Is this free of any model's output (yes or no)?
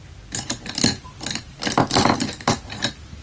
yes